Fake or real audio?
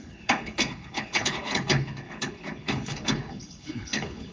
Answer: fake